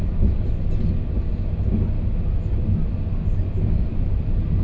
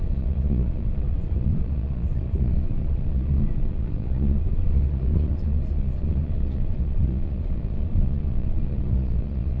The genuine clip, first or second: first